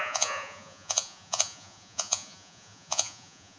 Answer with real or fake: fake